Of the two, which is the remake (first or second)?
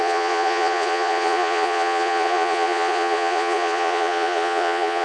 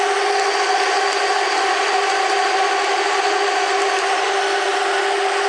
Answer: first